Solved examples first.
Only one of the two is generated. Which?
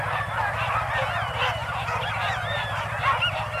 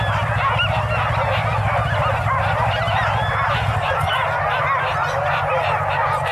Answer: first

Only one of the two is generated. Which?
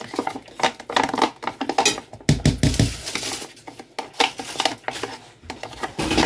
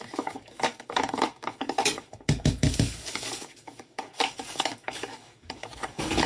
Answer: second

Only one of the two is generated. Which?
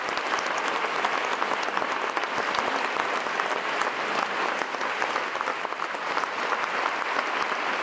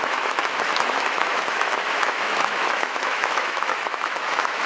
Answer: second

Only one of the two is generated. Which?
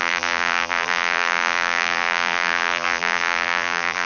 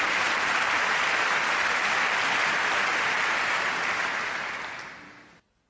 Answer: first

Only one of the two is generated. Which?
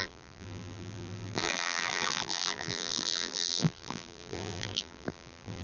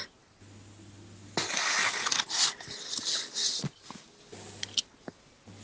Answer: first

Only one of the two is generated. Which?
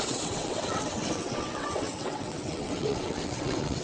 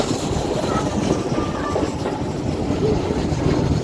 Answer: first